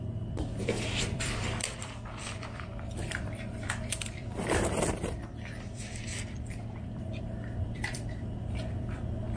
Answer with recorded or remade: remade